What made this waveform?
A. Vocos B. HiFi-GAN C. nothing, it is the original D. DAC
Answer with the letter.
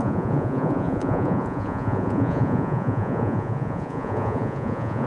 A